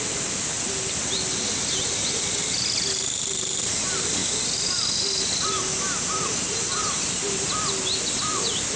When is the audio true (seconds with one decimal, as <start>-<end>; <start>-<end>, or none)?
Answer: 0.0-8.8